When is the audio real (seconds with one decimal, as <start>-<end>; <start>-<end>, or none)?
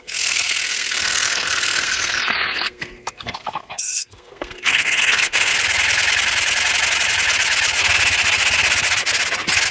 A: 5.5-9.7